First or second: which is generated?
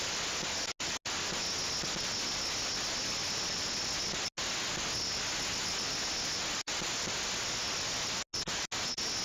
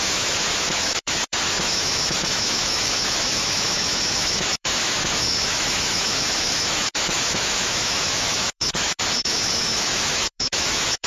second